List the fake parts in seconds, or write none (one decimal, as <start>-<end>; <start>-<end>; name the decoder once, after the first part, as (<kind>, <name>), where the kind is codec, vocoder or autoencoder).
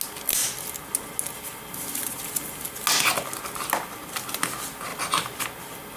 none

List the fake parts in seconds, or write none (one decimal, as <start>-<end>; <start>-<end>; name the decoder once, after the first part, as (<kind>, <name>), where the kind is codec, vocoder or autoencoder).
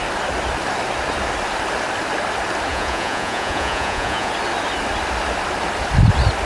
2.7-4.3 (vocoder, Vocos)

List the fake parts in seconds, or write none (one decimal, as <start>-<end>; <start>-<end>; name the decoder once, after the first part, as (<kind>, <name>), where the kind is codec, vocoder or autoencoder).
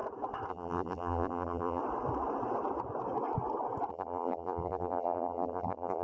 0.5-1.8 (vocoder, BigVGAN v2); 3.9-6.0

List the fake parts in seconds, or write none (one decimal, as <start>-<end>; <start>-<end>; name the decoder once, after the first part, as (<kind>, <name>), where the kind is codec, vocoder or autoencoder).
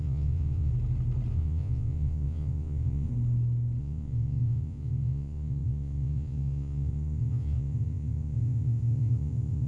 0.0-0.7 (vocoder, Vocos); 1.3-3.1; 3.8-9.7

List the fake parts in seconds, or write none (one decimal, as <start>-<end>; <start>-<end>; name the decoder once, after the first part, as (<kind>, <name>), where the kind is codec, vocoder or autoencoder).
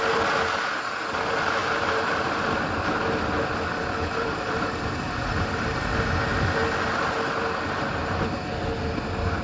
1.6-2.4 (vocoder, BigVGAN v2); 4.2-5.8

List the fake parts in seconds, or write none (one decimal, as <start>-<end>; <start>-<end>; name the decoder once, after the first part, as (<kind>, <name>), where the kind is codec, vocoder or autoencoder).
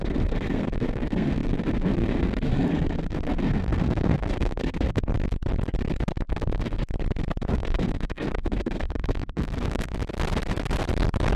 0.0-5.1 (codec, SNAC); 6.3-6.8; 7.5-9.9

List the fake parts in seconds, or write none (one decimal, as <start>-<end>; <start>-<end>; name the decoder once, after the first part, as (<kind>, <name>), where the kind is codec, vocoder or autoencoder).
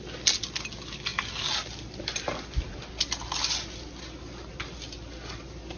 none